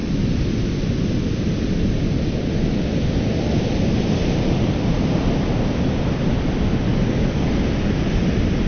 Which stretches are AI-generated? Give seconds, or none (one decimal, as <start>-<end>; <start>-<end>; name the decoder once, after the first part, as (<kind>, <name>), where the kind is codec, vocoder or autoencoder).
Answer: 6.9-7.5 (codec, DAC)